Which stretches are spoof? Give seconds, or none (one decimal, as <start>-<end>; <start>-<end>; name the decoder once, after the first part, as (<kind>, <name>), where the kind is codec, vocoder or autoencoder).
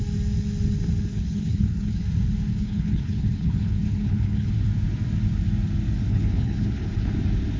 1.1-2.0 (codec, HILCodec); 2.5-4.5; 6.1-7.1